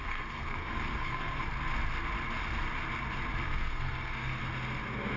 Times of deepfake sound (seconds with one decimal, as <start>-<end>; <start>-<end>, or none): 0.0-1.4; 3.4-4.4